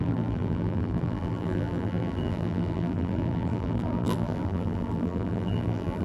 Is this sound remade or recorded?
remade